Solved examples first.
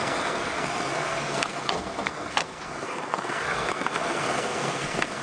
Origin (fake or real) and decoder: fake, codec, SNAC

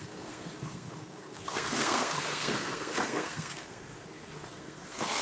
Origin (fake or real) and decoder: fake, codec, SNAC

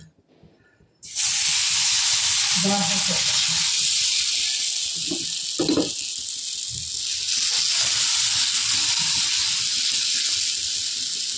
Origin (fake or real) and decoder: real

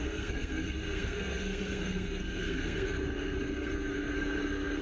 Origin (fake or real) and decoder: fake, codec, SNAC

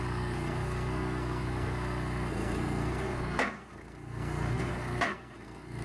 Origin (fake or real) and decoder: fake, codec, SNAC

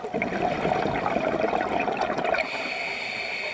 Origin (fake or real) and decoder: real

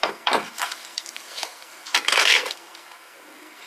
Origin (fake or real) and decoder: fake, codec, SNAC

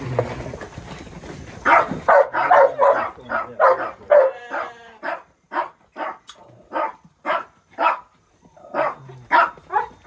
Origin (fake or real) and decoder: real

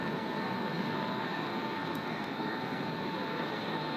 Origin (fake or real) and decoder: fake, codec, SNAC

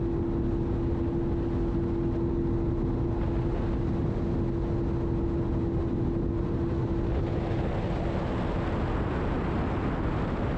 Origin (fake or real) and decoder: real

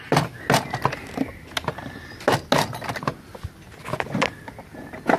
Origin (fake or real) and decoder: real